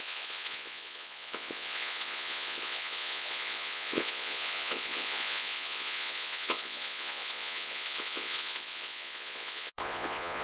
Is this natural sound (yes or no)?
no